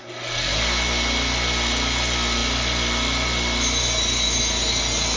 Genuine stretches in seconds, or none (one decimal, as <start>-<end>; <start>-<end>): 0.0-5.2